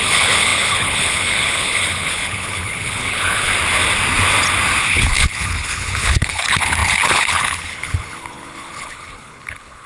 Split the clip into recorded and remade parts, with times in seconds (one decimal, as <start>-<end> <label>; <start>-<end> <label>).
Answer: 0.0-3.5 remade; 3.5-4.8 recorded; 4.8-9.9 remade